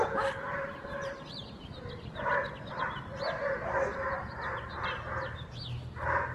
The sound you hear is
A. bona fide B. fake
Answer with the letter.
A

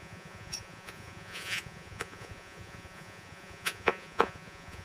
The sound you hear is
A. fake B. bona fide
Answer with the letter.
A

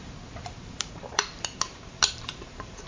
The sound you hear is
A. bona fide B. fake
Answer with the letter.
B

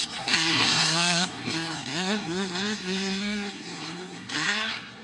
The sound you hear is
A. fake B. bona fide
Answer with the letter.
A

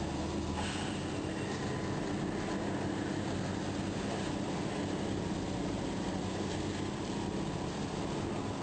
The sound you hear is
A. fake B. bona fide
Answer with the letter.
B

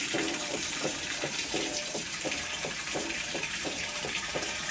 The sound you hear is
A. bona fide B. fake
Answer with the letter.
B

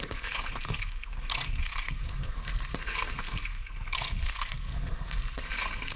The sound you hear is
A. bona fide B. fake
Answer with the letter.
B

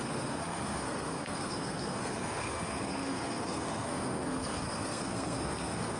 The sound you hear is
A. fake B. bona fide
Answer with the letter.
A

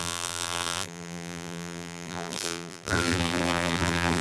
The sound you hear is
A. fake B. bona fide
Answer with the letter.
A